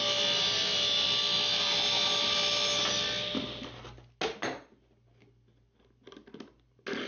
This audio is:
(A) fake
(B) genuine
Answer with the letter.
B